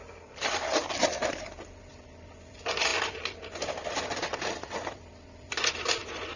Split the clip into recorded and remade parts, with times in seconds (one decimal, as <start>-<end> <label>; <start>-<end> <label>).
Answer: 0.0-6.4 recorded